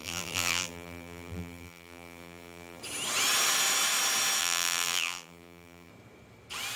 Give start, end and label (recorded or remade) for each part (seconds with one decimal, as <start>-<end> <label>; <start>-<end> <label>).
0.0-2.8 remade; 2.8-4.4 recorded; 4.4-5.9 remade; 5.9-6.8 recorded